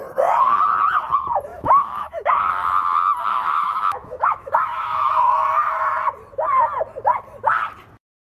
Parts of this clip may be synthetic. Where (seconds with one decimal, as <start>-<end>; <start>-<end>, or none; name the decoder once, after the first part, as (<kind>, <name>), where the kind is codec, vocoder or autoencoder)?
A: 1.5-2.5 (autoencoder, DAC-VAE); 3.3-5.1